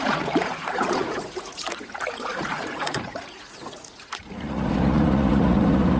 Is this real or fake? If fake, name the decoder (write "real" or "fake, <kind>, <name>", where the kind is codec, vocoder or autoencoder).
fake, vocoder, Vocos